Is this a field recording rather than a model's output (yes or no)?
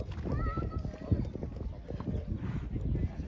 yes